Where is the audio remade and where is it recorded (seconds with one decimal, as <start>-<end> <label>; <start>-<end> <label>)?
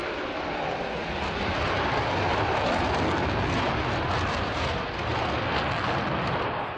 0.0-6.8 recorded